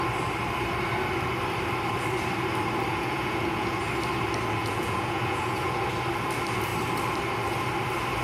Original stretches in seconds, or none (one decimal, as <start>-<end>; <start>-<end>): 0.0-2.9; 3.9-4.6; 5.9-8.2